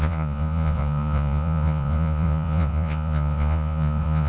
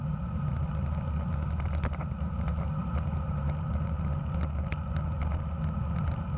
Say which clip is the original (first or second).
second